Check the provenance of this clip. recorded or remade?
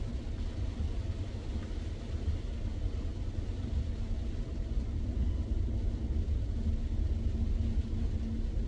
recorded